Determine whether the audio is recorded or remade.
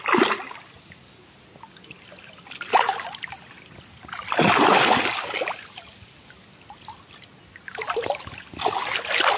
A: recorded